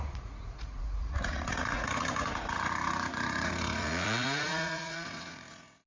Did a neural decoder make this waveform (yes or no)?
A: yes